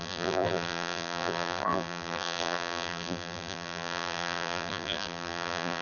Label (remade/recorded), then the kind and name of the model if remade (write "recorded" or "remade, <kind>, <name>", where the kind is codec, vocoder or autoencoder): remade, vocoder, BigVGAN v2